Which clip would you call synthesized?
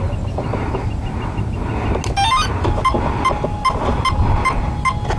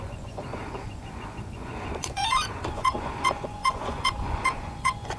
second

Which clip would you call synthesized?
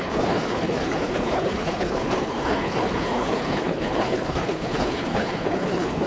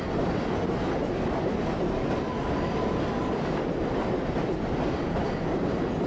first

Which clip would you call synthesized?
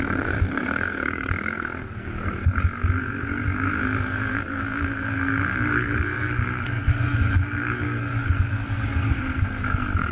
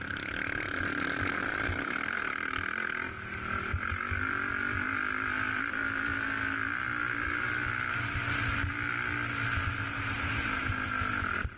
first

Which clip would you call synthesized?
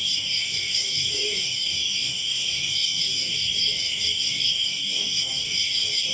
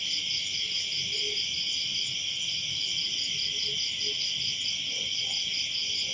first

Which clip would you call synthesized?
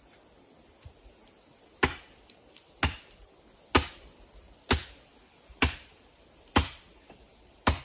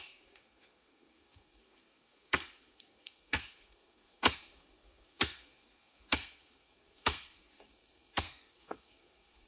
second